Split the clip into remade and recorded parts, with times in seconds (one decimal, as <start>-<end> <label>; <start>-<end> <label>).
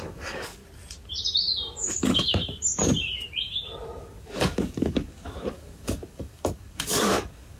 0.0-0.6 remade; 0.6-1.8 recorded; 1.8-2.4 remade; 2.4-4.0 recorded; 4.0-7.6 remade